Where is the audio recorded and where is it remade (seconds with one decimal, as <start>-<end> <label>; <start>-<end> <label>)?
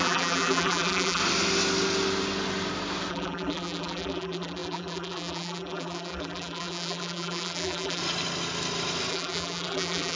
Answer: 0.0-1.2 remade; 1.2-3.1 recorded; 3.1-8.0 remade; 8.0-9.1 recorded; 9.1-10.2 remade